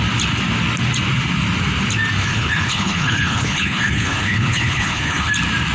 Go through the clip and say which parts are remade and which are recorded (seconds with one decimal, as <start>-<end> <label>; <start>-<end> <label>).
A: 0.0-2.2 recorded; 2.2-5.3 remade; 5.3-5.7 recorded